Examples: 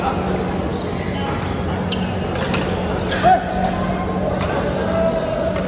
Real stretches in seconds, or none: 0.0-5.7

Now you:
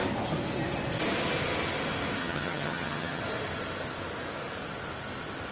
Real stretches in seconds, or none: 0.0-2.2; 3.2-5.5

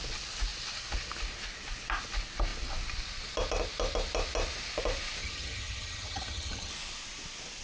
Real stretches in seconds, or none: 0.0-5.2; 6.7-7.6

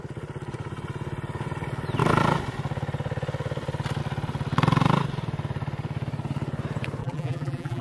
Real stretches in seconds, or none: 0.0-7.0

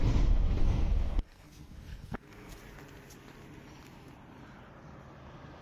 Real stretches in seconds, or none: 0.0-0.6; 2.6-5.6

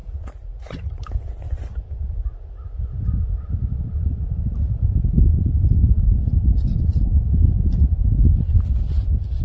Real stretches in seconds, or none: 1.0-9.4